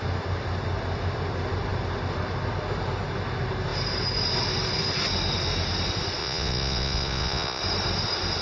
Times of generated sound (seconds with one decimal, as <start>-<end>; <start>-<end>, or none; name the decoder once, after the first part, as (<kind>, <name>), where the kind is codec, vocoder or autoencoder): 6.2-7.6 (vocoder, Vocos)